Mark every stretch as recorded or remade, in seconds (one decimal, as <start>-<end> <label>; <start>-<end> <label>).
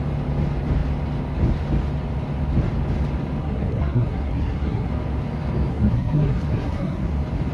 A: 0.0-3.4 recorded; 3.4-4.9 remade; 4.9-5.7 recorded; 5.7-7.1 remade; 7.1-7.5 recorded